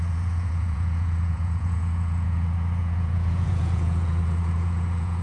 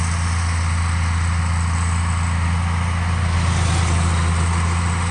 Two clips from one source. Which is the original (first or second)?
second